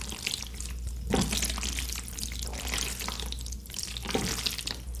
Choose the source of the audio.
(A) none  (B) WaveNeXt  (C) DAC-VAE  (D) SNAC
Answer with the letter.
A